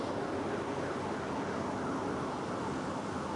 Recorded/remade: recorded